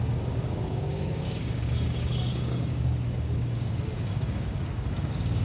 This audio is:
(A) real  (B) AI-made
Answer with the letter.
B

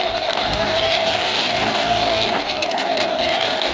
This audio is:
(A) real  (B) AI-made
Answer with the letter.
B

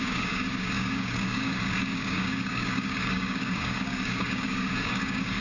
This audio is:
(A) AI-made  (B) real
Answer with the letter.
A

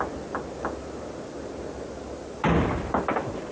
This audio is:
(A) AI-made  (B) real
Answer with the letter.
B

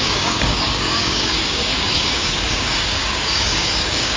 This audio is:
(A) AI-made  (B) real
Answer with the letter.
A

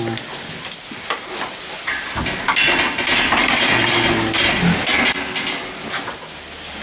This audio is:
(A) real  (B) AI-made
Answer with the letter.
A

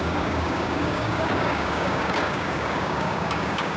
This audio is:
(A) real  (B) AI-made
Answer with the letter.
B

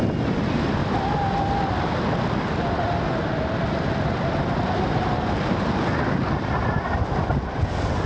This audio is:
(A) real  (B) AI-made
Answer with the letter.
A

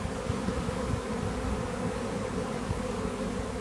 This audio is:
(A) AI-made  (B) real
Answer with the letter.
A